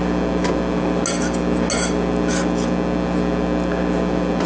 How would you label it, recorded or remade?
recorded